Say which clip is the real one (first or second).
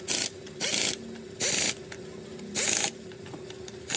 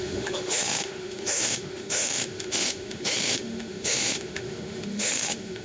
first